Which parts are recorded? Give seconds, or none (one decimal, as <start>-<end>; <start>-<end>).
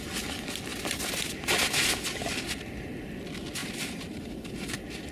0.0-5.1